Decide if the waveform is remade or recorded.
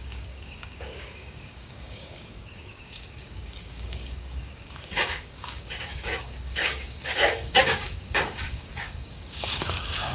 remade